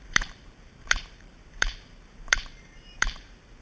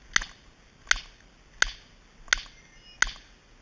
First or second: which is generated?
first